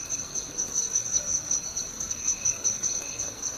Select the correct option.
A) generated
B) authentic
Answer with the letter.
A